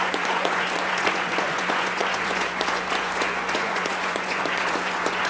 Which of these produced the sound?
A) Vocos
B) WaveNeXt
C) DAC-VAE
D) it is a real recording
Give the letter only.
A